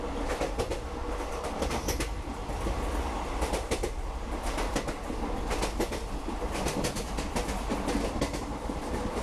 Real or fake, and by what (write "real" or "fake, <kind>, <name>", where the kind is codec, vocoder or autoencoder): real